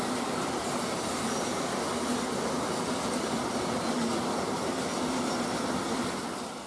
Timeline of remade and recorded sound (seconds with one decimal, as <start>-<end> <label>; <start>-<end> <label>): 0.0-4.1 recorded; 4.1-5.0 remade; 5.0-6.7 recorded